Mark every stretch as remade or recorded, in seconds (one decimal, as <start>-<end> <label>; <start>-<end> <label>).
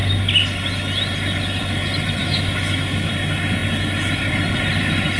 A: 0.0-2.2 recorded; 2.2-3.1 remade; 3.1-5.2 recorded